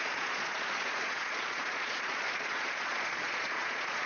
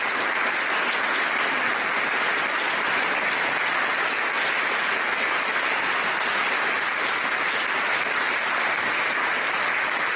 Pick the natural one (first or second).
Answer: second